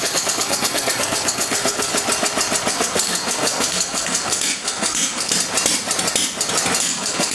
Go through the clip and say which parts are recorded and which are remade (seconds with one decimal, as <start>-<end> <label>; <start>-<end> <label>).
0.0-1.9 remade; 1.9-2.7 recorded; 2.7-5.3 remade; 5.3-6.8 recorded; 6.8-7.3 remade